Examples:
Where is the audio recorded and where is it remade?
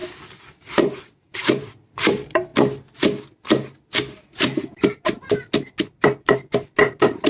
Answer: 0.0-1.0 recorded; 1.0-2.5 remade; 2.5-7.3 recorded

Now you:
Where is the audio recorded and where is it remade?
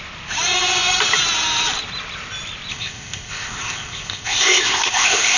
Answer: 0.0-2.7 recorded; 2.7-5.4 remade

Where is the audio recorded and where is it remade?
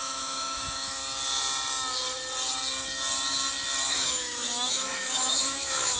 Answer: 0.0-1.0 remade; 1.0-3.9 recorded; 3.9-6.0 remade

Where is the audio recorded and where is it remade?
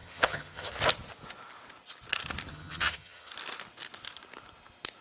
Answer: 0.0-0.7 remade; 0.7-2.5 recorded; 2.5-3.3 remade; 3.3-5.0 recorded